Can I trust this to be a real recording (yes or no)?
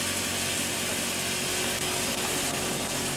yes